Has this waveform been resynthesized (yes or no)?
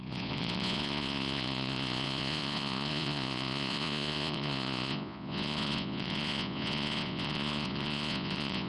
yes